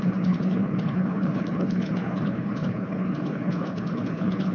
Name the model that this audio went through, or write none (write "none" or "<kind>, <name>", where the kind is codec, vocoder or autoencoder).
codec, HILCodec